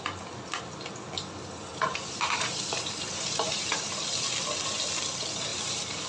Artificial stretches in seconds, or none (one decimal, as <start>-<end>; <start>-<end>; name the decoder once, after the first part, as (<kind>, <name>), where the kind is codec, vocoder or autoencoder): 1.7-4.1 (vocoder, BigVGAN v2); 5.5-6.1